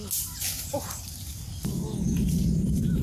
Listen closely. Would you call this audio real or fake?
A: real